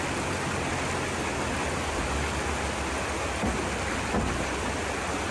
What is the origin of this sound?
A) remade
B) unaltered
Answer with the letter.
B